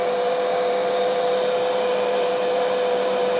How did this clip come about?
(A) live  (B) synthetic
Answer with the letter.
A